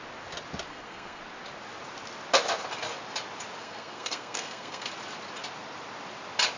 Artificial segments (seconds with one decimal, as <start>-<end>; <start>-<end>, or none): 0.7-1.2; 3.6-4.9